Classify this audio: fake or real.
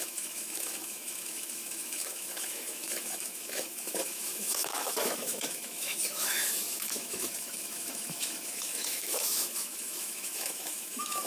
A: fake